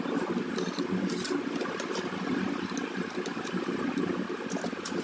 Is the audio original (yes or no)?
yes